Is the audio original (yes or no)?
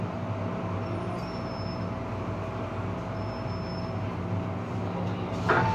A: yes